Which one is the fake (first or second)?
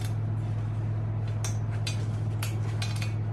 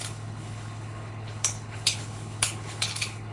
second